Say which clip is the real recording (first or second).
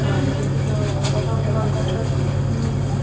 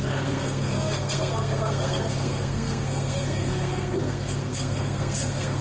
first